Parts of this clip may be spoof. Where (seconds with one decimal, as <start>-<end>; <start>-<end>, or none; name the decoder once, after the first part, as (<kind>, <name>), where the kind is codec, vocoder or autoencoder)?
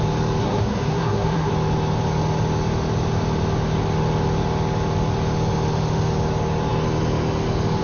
0.4-1.5 (codec, SNAC)